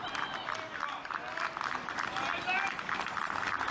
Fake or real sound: real